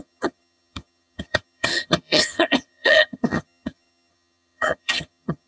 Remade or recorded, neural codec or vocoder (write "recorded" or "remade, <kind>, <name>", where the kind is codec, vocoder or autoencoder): remade, vocoder, HiFi-GAN